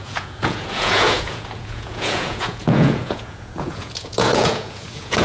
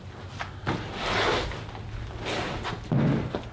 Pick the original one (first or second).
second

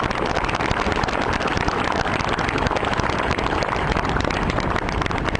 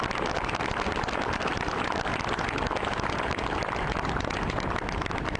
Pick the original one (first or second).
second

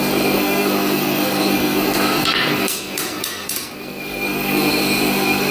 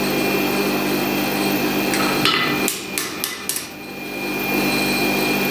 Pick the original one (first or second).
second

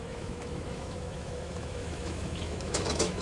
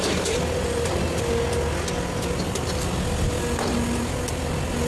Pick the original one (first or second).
second